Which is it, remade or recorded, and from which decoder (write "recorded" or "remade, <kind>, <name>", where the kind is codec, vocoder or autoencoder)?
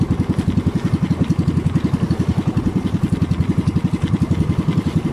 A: recorded